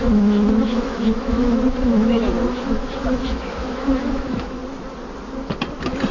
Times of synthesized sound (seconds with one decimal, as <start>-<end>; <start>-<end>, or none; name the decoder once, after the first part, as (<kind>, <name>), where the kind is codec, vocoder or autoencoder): 0.0-4.6 (autoencoder, DAC-VAE)